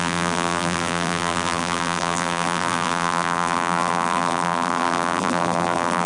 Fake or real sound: fake